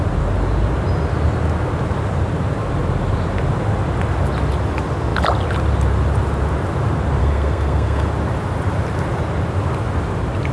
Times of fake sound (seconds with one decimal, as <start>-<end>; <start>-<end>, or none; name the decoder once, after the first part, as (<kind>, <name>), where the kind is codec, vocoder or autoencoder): 7.2-8.1 (codec, SNAC)